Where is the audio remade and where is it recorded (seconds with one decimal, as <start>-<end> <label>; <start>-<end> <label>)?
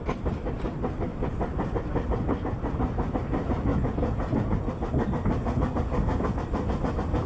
0.0-3.7 recorded; 3.7-4.7 remade; 4.7-7.3 recorded